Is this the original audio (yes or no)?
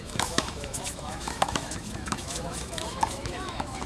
no